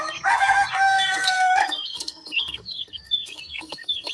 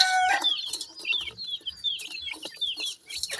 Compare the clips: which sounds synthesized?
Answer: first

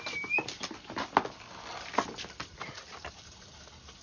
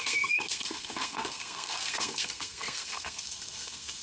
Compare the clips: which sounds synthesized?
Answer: second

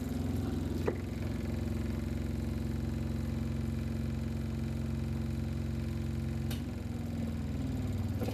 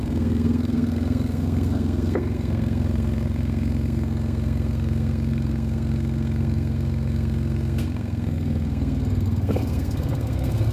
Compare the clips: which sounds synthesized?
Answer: second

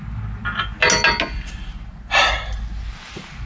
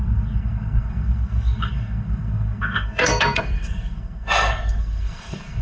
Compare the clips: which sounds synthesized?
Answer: second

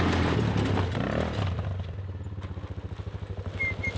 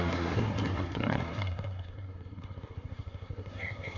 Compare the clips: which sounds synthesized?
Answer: second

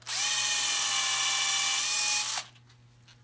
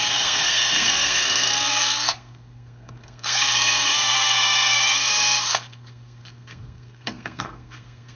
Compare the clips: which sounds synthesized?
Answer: second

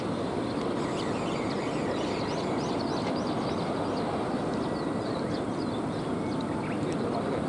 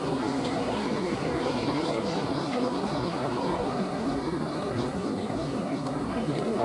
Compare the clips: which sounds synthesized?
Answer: second